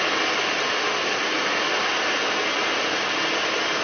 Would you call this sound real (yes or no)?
yes